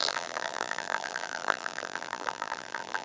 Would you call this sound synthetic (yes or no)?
yes